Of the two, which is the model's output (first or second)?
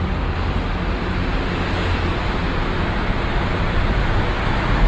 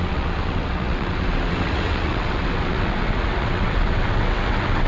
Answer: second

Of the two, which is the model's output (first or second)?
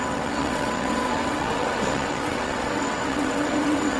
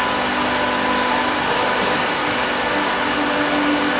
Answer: first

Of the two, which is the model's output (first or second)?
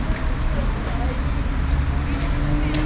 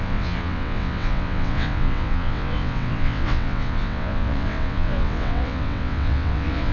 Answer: second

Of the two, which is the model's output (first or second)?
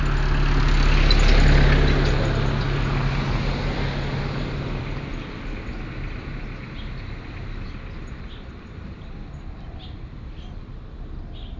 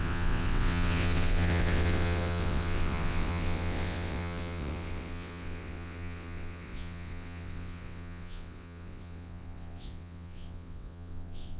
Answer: second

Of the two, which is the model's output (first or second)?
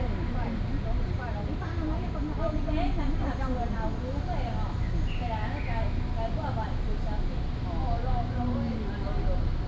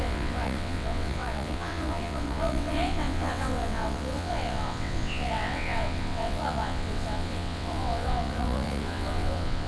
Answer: second